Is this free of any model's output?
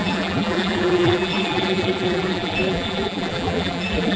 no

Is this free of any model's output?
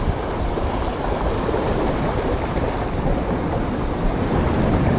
yes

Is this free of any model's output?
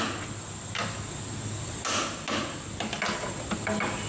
yes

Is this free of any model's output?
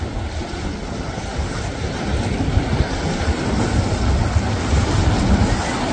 yes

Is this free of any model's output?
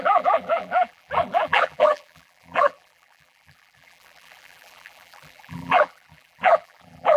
no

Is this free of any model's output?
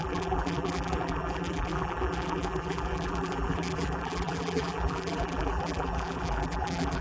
no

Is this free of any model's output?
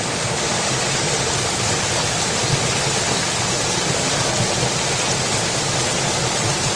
yes